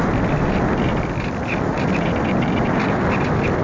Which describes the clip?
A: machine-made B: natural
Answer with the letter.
B